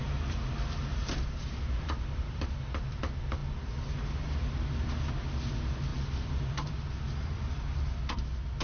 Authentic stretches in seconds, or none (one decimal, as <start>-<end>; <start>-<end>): 0.0-0.9; 3.0-5.9; 6.7-8.6